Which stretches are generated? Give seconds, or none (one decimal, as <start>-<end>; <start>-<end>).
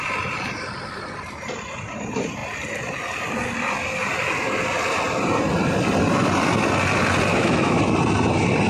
7.3-7.8